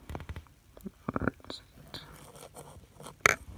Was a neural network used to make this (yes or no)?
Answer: no